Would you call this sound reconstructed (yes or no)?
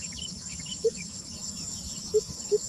yes